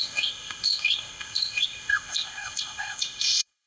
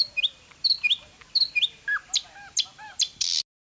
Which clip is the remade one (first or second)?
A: first